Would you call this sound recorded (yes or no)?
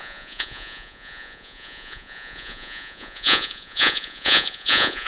no